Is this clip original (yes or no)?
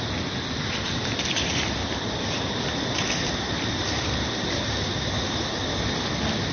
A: yes